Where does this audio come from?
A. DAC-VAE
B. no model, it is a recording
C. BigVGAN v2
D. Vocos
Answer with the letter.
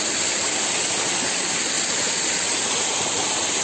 C